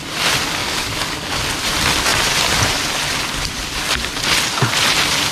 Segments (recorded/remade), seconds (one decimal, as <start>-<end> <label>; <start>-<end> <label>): 0.0-0.6 recorded; 0.6-1.4 remade; 1.4-5.3 recorded